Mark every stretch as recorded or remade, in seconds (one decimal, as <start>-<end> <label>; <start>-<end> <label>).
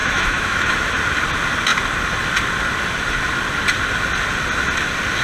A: 0.0-1.0 remade; 1.0-5.2 recorded